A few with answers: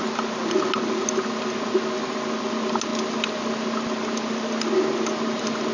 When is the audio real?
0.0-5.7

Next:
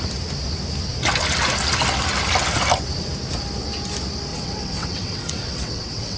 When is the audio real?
0.0-4.3